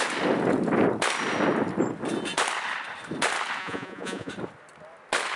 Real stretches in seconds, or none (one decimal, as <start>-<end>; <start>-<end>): 0.0-3.6; 4.3-5.4